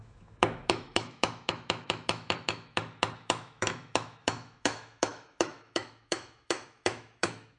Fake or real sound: fake